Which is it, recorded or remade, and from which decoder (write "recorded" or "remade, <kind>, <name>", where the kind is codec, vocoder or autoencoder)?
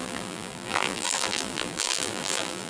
remade, vocoder, BigVGAN v2